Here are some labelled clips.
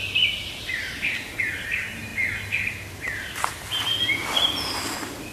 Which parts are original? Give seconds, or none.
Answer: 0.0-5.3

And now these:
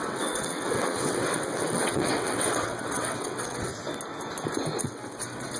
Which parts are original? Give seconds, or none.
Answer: 3.7-4.8